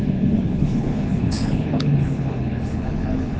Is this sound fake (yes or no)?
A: yes